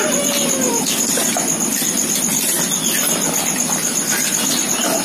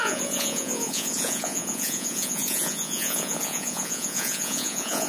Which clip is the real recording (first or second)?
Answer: first